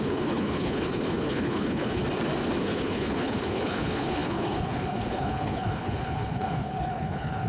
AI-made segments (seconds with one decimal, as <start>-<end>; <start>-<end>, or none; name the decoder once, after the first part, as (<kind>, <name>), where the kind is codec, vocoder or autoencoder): 0.0-2.0 (codec, HILCodec); 2.6-7.5